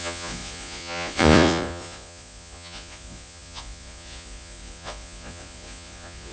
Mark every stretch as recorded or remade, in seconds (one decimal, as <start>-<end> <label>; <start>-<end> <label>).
0.0-6.3 remade